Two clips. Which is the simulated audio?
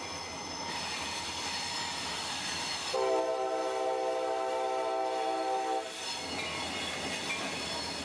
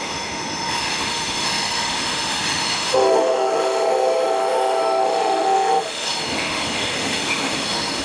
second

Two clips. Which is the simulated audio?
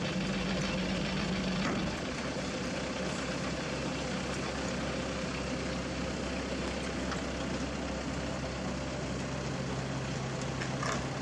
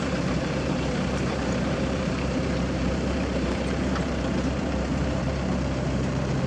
second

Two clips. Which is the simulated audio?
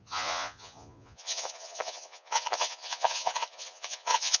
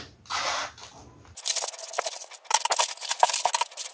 first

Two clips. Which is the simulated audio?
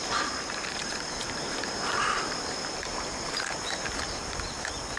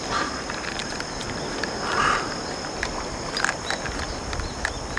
first